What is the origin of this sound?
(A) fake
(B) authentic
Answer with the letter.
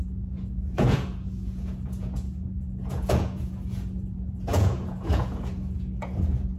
A